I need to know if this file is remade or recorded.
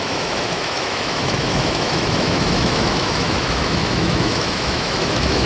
remade